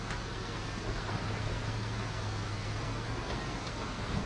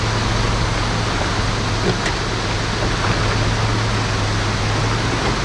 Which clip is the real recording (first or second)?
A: second